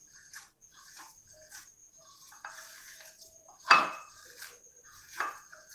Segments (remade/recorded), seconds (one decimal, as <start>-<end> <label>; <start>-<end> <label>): 0.0-4.2 remade; 4.2-4.8 recorded; 4.8-5.7 remade